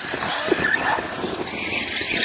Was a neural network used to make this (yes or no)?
no